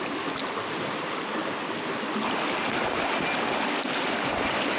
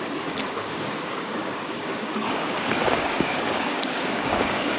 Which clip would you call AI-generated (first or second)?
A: second